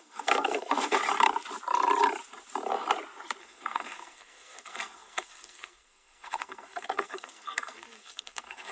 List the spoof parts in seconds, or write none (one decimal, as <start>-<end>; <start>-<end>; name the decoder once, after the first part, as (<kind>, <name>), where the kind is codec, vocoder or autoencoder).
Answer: 0.0-1.0 (codec, SNAC); 3.4-8.7